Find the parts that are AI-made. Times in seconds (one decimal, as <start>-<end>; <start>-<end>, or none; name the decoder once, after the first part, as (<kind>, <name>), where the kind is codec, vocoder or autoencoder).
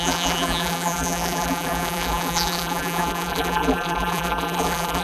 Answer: 0.0-5.0 (vocoder, BigVGAN v2)